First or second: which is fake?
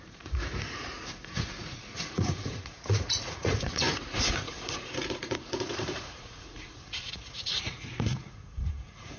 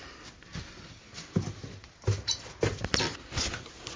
first